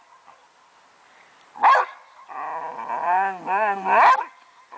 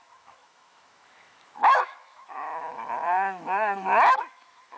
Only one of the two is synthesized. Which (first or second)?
second